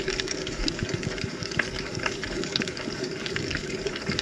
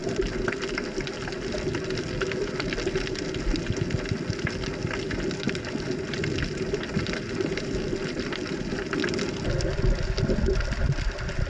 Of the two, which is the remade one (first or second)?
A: first